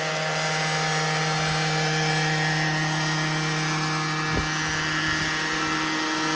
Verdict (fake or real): real